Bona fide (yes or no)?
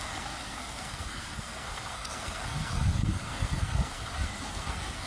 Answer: no